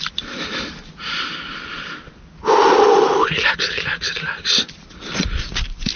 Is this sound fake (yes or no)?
no